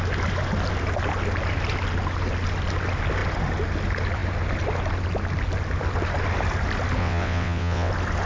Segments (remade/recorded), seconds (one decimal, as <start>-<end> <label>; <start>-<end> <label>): 0.0-7.0 recorded; 7.0-7.9 remade; 7.9-8.3 recorded